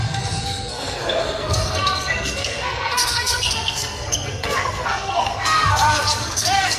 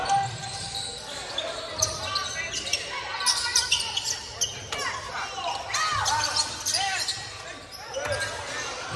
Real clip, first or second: second